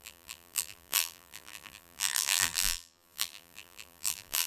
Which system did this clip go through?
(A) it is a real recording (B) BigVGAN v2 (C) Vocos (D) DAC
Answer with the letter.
B